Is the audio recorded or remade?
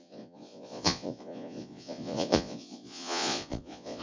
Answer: remade